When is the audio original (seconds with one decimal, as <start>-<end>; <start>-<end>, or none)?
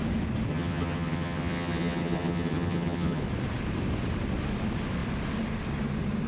0.0-0.5; 3.2-6.3